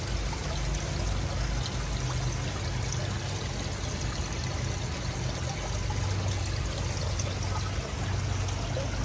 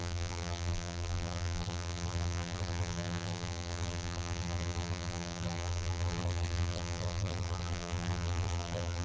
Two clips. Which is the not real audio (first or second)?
second